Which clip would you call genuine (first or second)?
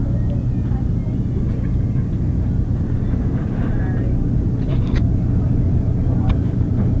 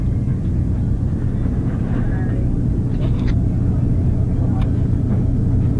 second